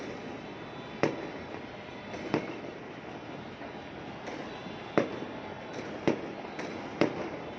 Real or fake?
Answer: real